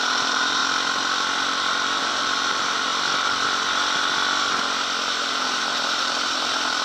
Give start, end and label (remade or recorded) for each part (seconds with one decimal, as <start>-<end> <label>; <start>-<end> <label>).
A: 0.0-0.6 remade; 0.6-2.0 recorded; 2.0-2.9 remade; 2.9-5.1 recorded; 5.1-6.8 remade